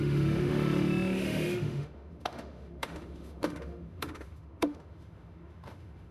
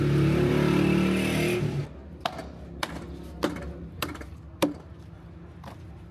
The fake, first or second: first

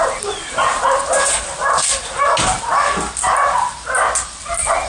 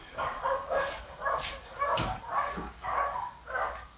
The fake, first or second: second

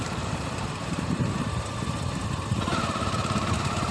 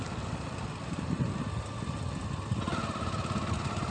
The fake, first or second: first